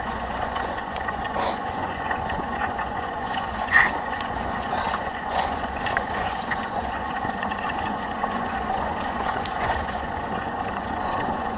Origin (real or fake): fake